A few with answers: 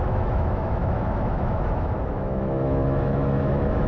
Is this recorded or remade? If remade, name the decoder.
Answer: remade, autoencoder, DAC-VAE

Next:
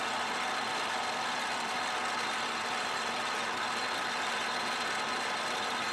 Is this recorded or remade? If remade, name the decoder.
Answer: recorded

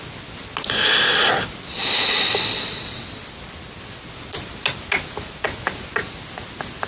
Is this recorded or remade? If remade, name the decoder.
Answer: recorded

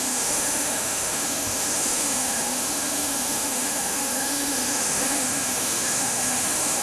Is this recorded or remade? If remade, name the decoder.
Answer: remade, autoencoder, DAC-VAE